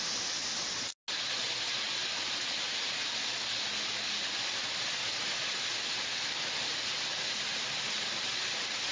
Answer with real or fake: real